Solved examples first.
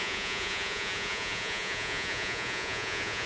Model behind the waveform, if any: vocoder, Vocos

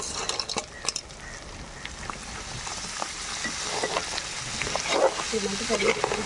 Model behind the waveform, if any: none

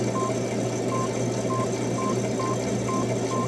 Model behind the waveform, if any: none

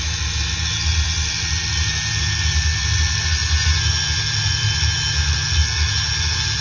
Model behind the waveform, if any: none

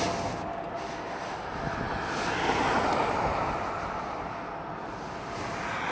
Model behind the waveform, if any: none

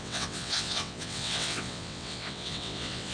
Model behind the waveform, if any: vocoder, WaveNeXt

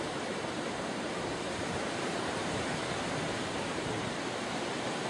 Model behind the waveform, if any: vocoder, BigVGAN v2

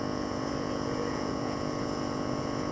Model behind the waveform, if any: vocoder, Vocos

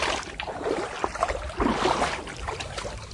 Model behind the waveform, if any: none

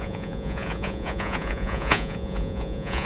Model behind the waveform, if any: vocoder, Vocos